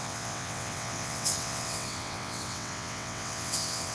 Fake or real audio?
fake